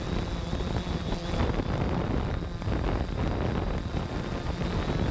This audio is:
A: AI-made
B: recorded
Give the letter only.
B